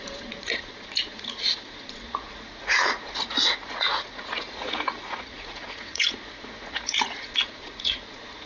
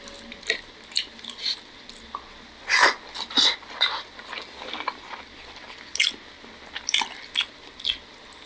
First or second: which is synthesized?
first